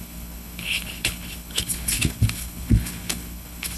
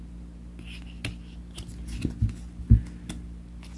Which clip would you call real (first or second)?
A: second